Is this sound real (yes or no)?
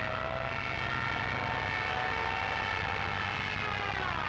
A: yes